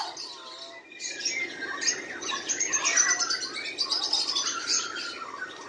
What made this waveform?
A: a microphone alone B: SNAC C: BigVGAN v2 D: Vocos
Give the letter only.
A